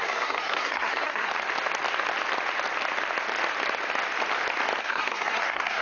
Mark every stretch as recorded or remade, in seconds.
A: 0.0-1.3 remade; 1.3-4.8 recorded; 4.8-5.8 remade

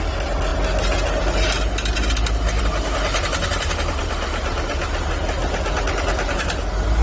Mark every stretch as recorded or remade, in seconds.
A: 0.0-7.0 recorded

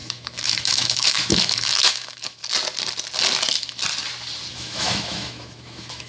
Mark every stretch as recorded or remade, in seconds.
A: 0.0-2.4 remade; 2.4-4.5 recorded; 4.5-6.1 remade

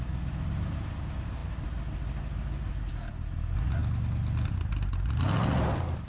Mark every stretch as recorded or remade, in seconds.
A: 0.0-6.1 recorded

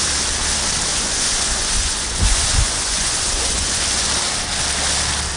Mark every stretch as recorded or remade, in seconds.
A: 0.0-0.9 recorded; 0.9-4.1 remade; 4.1-5.4 recorded

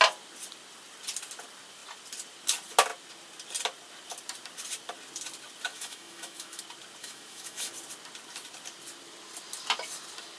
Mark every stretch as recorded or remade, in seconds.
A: 0.0-5.7 recorded; 5.7-6.6 remade; 6.6-7.0 recorded; 7.0-7.7 remade; 7.7-10.4 recorded

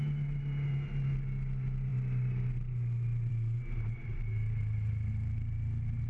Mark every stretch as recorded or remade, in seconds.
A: 0.0-6.1 recorded